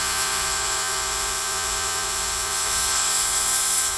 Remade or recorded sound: remade